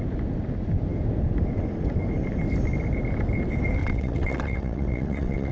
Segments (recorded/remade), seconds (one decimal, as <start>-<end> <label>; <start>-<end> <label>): 0.0-3.8 recorded; 3.8-5.5 remade